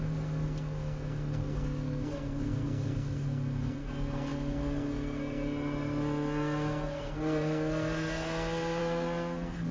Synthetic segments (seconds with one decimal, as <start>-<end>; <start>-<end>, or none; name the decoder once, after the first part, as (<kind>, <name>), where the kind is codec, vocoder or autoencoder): 0.0-9.7 (codec, SNAC)